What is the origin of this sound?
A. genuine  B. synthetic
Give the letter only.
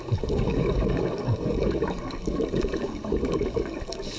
B